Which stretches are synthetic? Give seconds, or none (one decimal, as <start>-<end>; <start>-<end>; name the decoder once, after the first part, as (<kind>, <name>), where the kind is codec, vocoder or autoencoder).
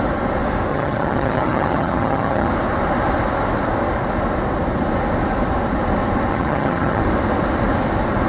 0.7-2.5 (vocoder, HiFi-GAN); 6.3-7.0